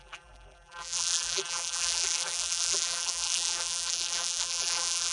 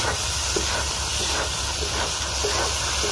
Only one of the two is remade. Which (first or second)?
first